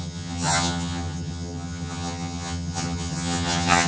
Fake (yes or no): yes